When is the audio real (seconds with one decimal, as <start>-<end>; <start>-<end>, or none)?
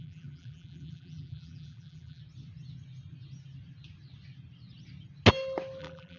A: 2.2-5.8